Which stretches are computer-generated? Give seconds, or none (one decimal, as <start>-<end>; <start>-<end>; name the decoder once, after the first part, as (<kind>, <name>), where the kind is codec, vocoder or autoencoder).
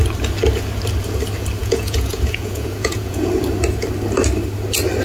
1.6-3.3 (vocoder, Vocos)